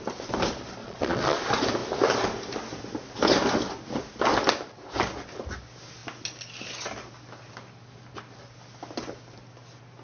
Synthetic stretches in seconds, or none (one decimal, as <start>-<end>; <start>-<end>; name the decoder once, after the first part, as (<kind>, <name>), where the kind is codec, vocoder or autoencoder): 0.8-1.4 (vocoder, Vocos)